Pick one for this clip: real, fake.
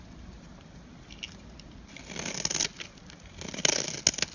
real